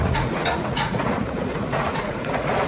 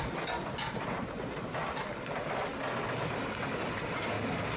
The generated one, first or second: first